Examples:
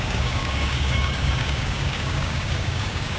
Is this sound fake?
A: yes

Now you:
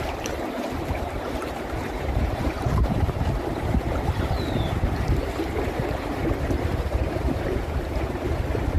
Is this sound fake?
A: yes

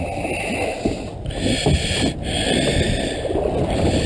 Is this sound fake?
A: no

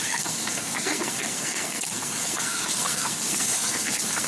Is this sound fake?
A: yes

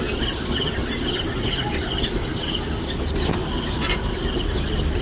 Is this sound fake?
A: no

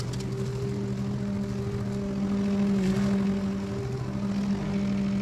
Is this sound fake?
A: no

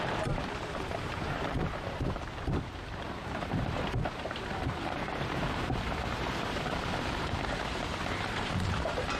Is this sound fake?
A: yes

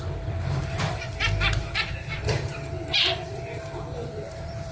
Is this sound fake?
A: yes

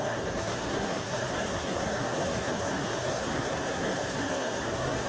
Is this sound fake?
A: yes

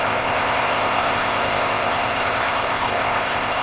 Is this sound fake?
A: yes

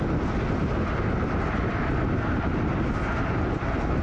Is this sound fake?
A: no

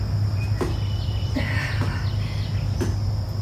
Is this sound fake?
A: no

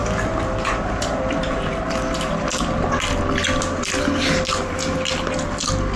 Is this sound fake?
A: no